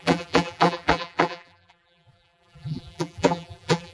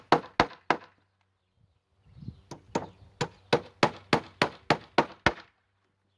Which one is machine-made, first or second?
first